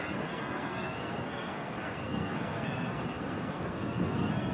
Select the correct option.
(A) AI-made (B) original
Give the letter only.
A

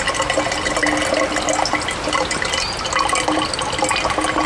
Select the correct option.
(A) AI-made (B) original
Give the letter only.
B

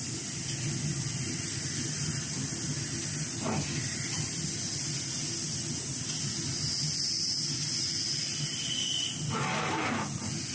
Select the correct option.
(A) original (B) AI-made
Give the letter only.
A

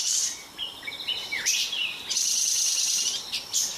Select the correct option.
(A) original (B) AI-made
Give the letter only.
A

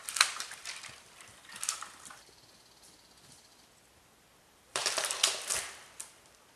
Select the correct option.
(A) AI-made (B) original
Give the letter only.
A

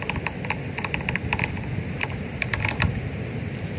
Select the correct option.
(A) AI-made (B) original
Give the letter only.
B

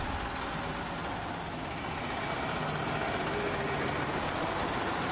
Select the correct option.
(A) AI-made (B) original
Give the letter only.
B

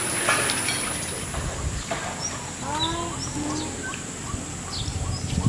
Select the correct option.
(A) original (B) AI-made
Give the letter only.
A